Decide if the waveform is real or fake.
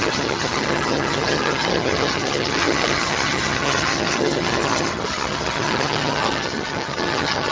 fake